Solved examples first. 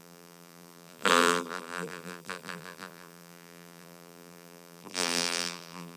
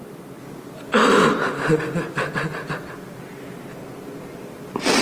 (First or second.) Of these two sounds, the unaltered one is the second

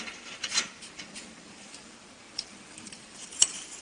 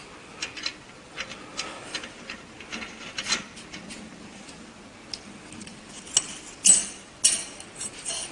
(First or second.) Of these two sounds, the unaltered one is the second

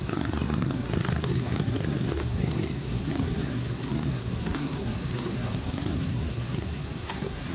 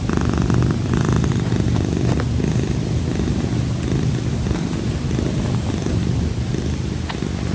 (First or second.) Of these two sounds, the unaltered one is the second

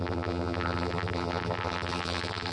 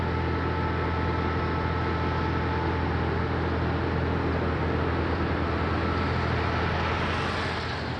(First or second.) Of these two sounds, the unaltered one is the second